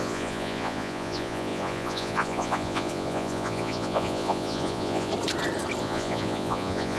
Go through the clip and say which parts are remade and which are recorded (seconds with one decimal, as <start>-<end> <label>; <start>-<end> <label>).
0.0-5.1 remade; 5.1-5.8 recorded; 5.8-7.0 remade